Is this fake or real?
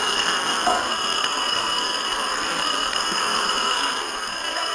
fake